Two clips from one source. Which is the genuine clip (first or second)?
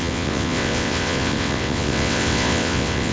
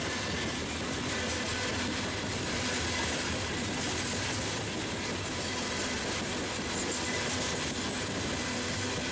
second